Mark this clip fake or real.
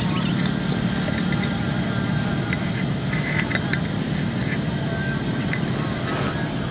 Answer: real